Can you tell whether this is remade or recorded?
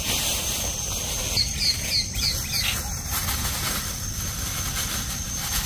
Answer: recorded